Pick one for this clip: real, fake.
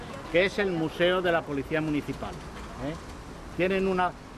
real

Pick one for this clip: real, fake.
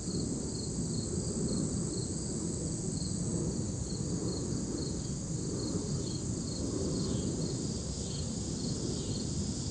real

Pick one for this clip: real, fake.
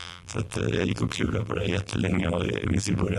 fake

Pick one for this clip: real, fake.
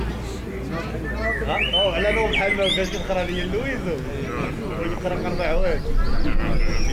real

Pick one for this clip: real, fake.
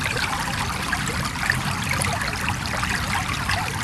fake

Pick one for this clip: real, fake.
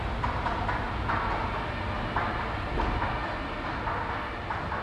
real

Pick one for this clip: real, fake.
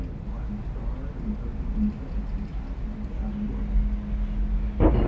real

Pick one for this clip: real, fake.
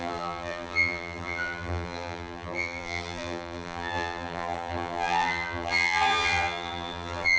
fake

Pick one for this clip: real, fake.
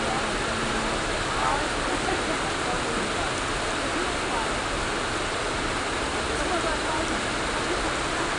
real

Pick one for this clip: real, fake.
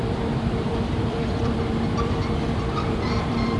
fake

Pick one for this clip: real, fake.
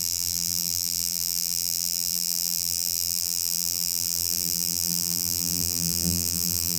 fake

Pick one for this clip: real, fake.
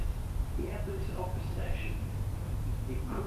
real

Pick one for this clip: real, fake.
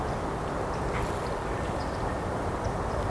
fake